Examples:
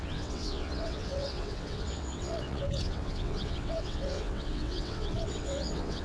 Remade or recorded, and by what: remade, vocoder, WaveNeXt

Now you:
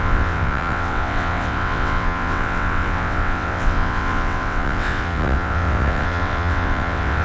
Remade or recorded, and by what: remade, vocoder, WaveNeXt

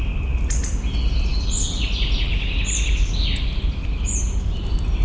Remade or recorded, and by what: recorded